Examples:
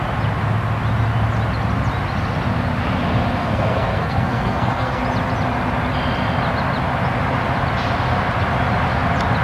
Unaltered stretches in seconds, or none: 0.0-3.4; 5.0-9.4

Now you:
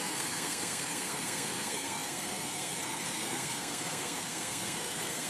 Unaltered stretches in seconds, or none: none

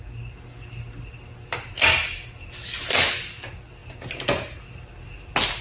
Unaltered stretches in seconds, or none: 0.0-5.6

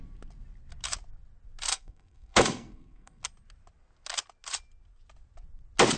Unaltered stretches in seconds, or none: 0.0-1.7; 3.2-6.0

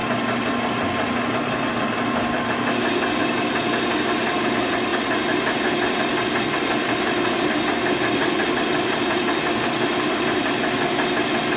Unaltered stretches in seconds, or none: 0.0-11.6

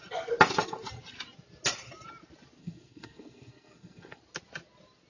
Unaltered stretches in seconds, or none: 0.0-2.6; 4.2-5.1

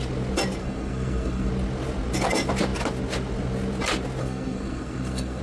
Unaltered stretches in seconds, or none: 0.0-0.6; 1.5-4.2

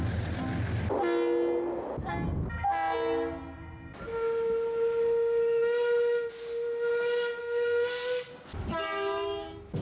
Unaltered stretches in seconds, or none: 0.0-7.4; 8.3-9.8